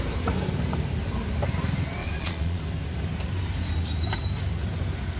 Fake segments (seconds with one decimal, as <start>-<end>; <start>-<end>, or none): 2.0-2.6